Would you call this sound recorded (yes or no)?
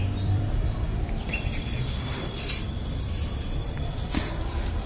no